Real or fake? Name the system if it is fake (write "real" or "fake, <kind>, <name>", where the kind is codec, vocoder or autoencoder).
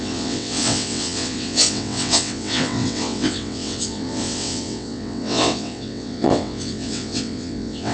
fake, vocoder, WaveNeXt